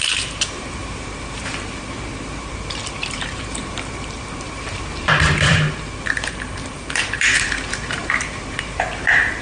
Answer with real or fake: fake